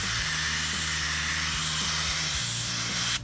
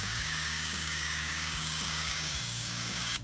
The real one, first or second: first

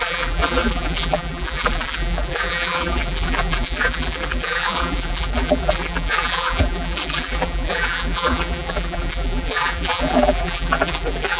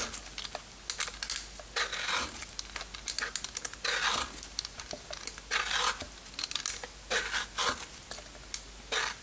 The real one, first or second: second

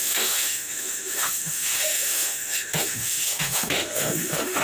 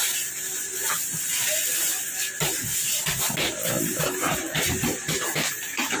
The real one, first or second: second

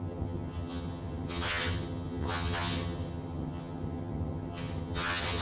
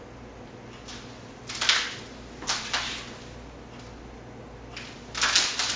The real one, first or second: second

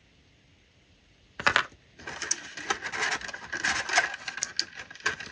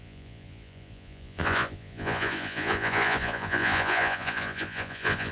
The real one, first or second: first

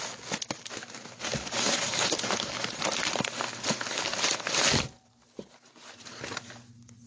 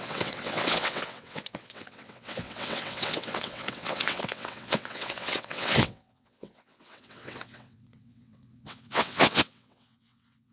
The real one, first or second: first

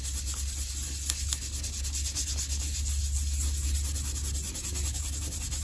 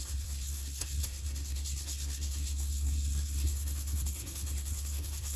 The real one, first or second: first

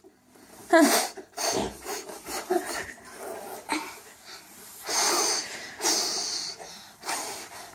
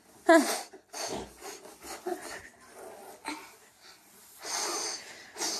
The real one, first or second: second